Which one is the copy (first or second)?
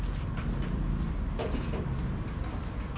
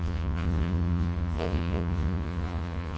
second